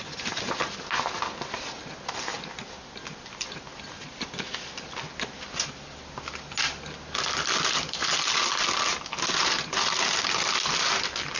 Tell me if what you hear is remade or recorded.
recorded